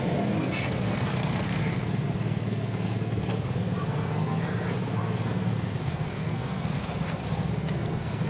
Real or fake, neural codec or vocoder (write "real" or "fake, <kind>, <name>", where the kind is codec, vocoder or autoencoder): fake, codec, SNAC